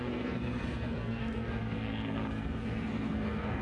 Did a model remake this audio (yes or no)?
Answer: yes